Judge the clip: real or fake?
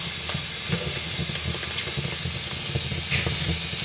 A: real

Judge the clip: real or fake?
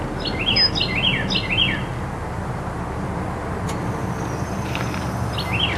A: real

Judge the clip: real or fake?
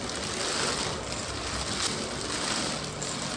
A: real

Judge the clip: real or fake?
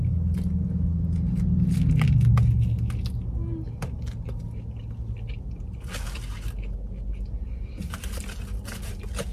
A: real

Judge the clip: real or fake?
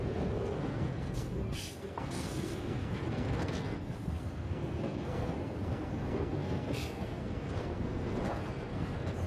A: fake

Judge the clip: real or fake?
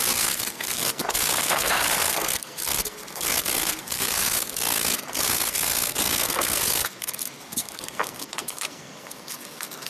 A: fake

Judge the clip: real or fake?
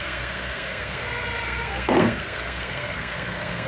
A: fake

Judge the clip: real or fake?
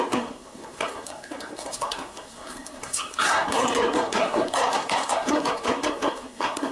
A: fake